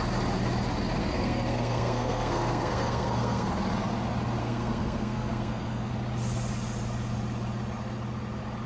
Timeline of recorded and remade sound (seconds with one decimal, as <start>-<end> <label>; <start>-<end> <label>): 0.0-1.0 recorded; 1.0-3.5 remade; 3.5-4.4 recorded; 4.4-5.9 remade; 5.9-8.7 recorded